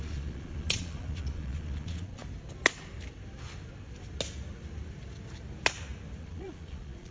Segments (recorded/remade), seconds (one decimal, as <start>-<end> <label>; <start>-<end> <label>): 0.0-2.2 remade; 2.2-6.2 recorded; 6.2-7.1 remade